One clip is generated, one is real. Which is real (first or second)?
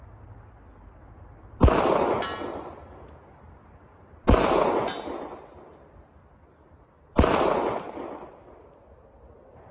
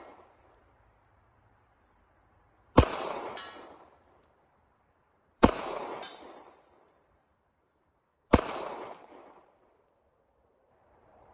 first